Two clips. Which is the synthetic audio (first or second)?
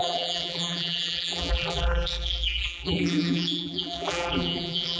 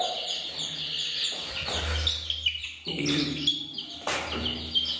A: first